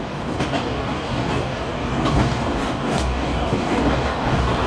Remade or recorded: remade